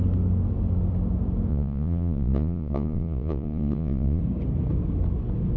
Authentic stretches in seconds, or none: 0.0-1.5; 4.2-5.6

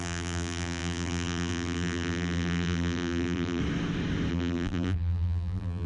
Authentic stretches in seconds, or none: 3.6-4.3